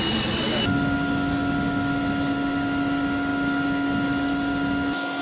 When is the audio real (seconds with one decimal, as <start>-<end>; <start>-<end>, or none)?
0.0-5.2